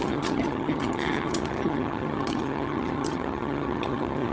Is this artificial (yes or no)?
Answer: yes